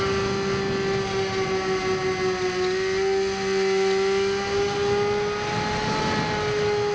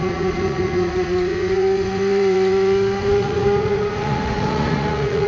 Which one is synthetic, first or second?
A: second